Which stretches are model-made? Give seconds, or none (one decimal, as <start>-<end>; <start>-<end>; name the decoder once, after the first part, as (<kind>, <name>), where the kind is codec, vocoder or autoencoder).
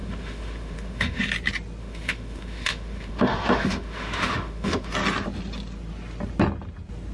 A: 0.0-1.2 (autoencoder, DAC-VAE); 1.8-4.9